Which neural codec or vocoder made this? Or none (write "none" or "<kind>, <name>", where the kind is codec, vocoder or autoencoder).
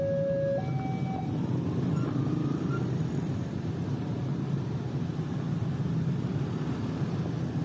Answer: none